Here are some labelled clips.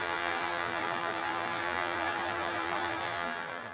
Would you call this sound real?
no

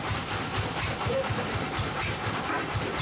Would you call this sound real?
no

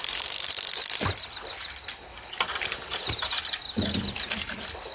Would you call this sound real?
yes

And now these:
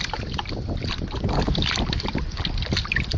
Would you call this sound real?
yes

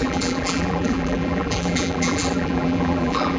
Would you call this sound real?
no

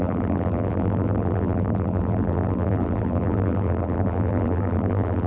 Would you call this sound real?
no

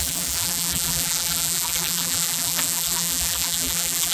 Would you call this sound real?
no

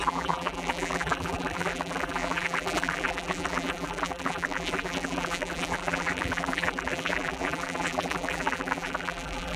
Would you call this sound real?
no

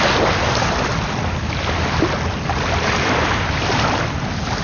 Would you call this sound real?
yes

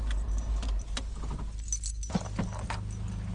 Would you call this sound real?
yes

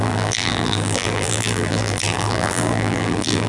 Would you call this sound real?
no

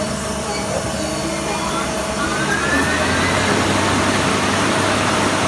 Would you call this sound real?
yes